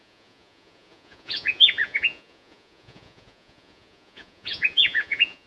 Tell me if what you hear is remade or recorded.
remade